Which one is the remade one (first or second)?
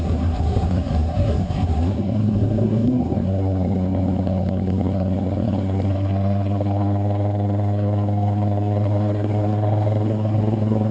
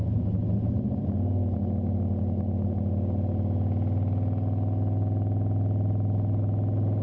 first